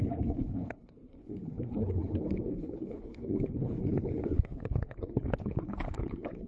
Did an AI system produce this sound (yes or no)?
yes